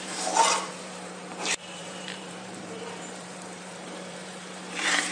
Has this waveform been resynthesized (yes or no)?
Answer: yes